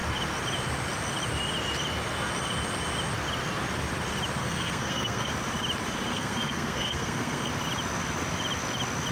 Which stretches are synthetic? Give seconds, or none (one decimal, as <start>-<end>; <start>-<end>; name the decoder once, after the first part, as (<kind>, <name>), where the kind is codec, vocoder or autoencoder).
4.4-5.3 (codec, SNAC); 6.1-7.5